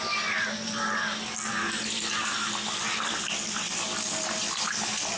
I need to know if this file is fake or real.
real